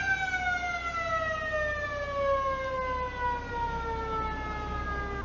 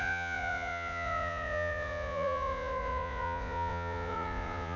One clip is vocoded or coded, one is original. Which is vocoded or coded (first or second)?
second